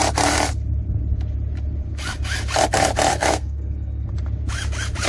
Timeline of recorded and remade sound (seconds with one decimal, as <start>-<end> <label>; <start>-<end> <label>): 0.0-3.1 recorded; 3.1-4.1 remade; 4.1-5.1 recorded